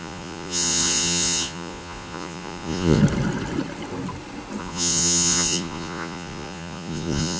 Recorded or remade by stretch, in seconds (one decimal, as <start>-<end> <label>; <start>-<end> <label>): 0.0-3.0 remade; 3.0-4.6 recorded; 4.6-7.4 remade